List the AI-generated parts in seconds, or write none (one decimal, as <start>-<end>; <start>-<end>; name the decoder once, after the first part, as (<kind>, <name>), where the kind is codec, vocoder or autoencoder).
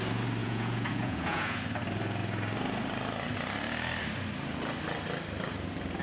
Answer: 0.4-1.6 (vocoder, Vocos)